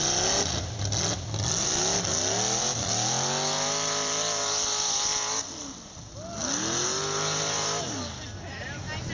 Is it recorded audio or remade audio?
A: recorded